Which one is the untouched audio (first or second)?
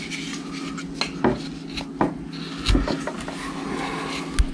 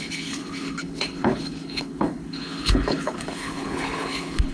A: first